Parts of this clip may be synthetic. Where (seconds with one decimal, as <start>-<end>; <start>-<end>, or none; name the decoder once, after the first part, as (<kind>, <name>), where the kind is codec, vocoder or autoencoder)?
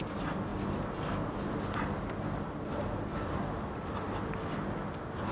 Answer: none